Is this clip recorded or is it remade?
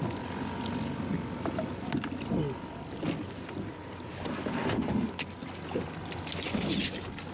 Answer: recorded